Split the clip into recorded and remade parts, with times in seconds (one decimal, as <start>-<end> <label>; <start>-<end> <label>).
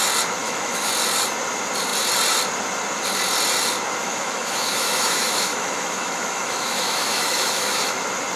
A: 0.0-0.4 recorded; 0.4-0.9 remade; 0.9-4.0 recorded; 4.0-8.0 remade; 8.0-8.4 recorded